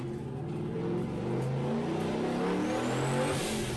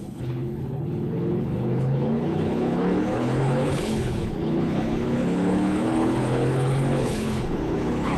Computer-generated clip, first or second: second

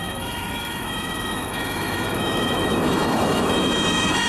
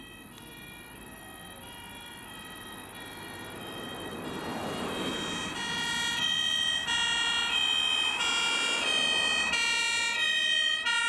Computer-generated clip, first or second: first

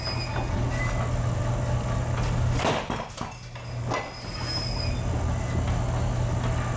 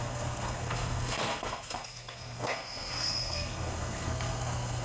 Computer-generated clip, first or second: second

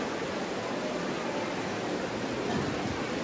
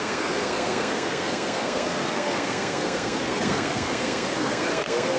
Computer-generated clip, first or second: second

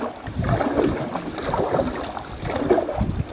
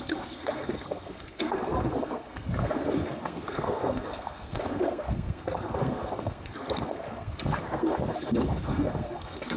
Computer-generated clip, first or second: second